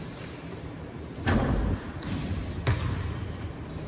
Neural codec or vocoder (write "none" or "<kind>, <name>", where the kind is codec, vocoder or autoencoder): vocoder, BigVGAN v2